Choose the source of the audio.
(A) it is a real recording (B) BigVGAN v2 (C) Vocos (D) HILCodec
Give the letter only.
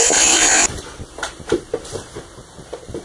B